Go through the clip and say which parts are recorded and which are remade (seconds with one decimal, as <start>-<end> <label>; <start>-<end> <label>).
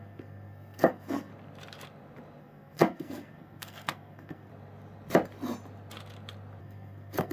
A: 0.0-1.3 remade; 1.3-2.4 recorded; 2.4-4.5 remade; 4.5-6.6 recorded; 6.6-7.3 remade